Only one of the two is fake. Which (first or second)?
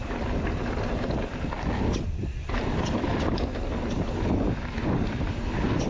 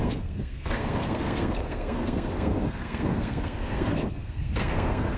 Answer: second